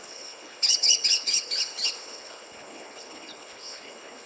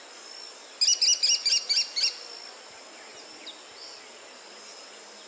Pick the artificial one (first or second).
first